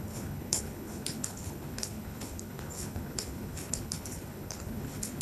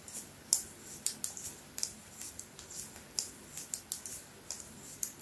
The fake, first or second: first